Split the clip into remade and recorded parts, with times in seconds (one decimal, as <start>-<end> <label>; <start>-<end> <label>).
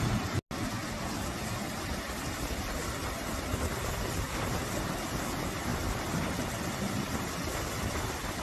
0.0-8.4 recorded